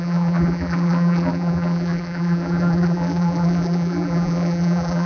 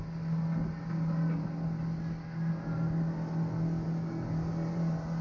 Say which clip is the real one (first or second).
second